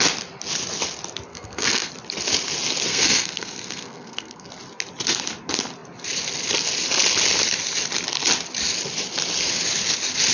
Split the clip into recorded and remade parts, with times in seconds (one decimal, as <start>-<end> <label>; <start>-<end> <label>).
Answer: 0.0-1.3 recorded; 1.3-1.9 remade; 1.9-2.9 recorded; 2.9-4.5 remade; 4.5-10.3 recorded